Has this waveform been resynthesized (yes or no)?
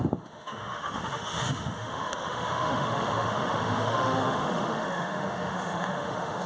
yes